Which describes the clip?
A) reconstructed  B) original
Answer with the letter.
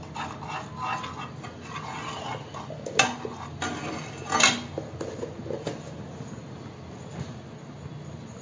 B